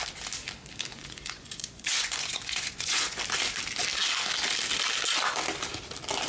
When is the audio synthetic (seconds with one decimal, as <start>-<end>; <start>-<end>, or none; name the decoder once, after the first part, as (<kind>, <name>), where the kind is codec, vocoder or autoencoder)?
0.9-3.2 (vocoder, Vocos)